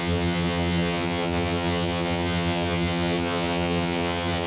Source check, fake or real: fake